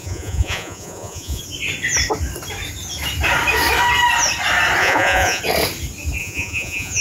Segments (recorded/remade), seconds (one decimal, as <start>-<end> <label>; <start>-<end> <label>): 0.0-1.4 remade; 1.4-4.8 recorded; 4.8-5.4 remade; 5.4-6.2 recorded; 6.2-7.0 remade